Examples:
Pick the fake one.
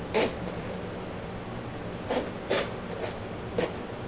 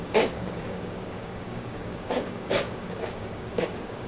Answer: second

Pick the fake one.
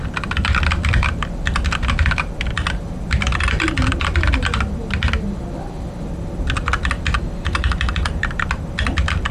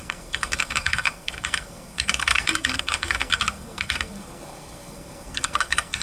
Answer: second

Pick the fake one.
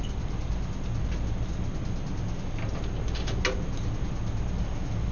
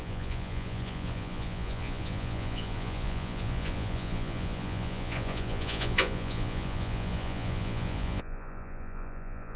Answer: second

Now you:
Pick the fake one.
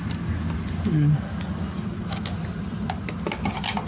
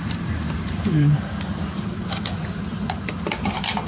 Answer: second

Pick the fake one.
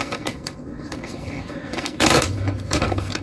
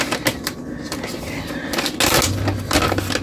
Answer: first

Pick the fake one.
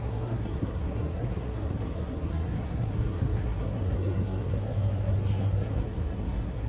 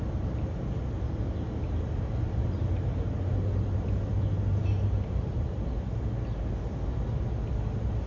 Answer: first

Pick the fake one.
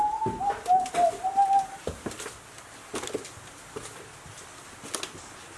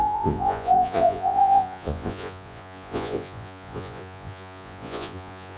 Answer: second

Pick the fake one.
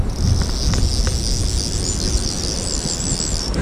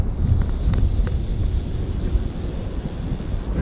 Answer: second